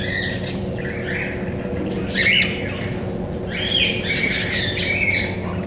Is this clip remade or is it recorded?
recorded